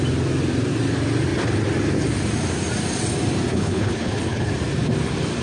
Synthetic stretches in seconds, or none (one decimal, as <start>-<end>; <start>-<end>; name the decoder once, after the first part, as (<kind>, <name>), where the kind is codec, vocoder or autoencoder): 3.5-4.5 (codec, HILCodec)